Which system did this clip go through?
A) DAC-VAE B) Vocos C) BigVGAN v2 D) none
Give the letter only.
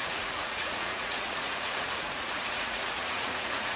B